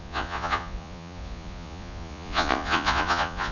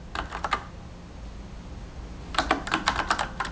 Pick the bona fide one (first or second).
second